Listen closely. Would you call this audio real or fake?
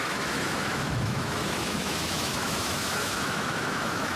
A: fake